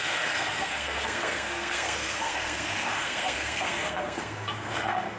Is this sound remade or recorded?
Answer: remade